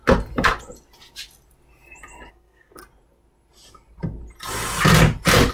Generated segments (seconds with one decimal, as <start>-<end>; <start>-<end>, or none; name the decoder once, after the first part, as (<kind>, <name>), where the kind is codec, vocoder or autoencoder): 2.3-2.8 (codec, SNAC)